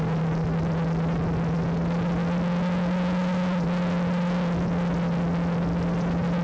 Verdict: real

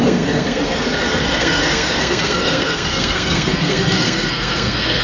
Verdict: fake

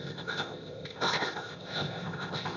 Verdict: fake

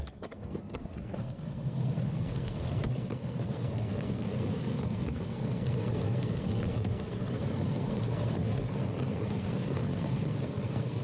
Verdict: fake